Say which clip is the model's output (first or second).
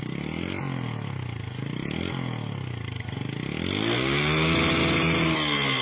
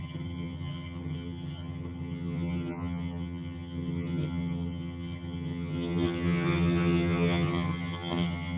second